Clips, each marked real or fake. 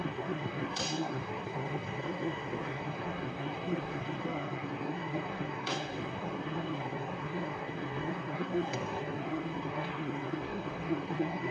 fake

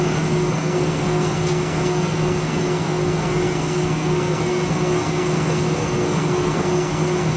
fake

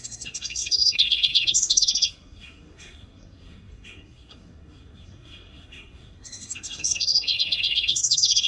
fake